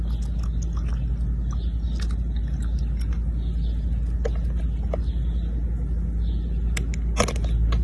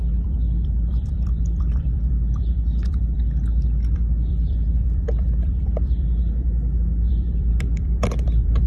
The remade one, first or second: second